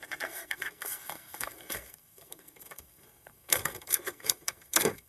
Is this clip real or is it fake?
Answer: fake